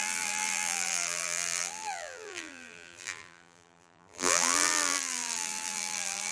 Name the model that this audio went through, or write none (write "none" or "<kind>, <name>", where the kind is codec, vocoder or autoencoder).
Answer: vocoder, BigVGAN v2